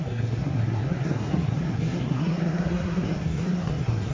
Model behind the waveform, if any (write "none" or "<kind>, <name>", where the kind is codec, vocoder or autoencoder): codec, SNAC